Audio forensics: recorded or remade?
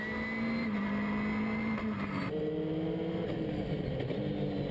recorded